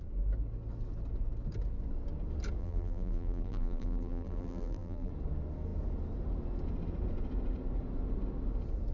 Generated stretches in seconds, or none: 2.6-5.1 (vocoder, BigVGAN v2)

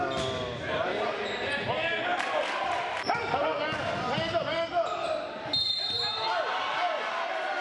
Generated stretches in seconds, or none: 2.1-3.3 (vocoder, BigVGAN v2)